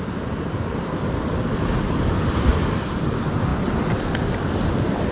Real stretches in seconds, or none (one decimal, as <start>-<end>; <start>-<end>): 0.0-5.1